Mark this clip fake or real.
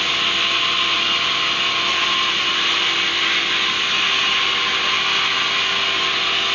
real